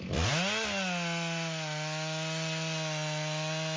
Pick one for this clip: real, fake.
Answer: real